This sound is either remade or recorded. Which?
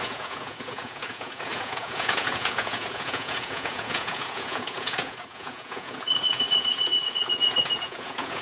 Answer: remade